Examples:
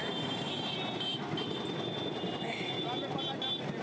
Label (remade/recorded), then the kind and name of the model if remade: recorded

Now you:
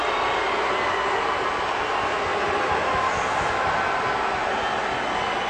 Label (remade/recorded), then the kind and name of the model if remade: recorded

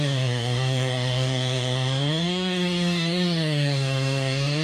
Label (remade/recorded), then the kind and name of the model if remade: remade, codec, DAC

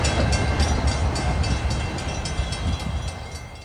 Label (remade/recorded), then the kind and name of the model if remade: recorded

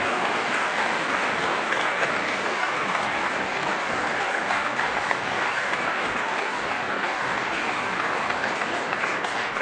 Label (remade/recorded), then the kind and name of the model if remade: remade, codec, DAC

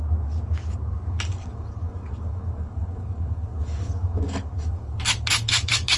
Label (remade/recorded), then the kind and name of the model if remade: remade, codec, DAC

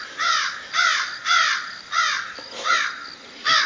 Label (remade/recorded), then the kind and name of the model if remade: recorded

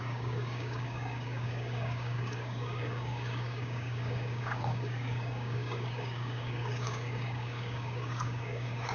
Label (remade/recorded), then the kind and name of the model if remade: remade, codec, DAC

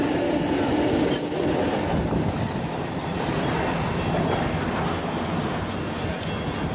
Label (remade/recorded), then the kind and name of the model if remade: recorded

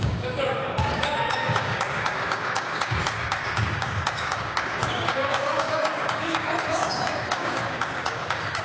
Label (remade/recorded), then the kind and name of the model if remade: remade, codec, DAC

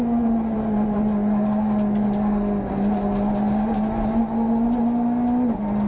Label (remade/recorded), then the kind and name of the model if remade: recorded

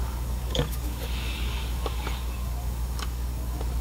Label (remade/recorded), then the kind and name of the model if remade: remade, codec, DAC